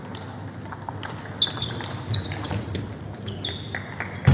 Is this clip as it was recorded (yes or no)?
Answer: yes